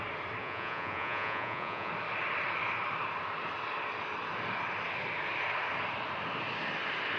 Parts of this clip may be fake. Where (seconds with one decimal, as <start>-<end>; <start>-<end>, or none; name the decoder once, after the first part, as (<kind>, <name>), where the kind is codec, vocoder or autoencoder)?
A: 0.4-1.9 (vocoder, Vocos)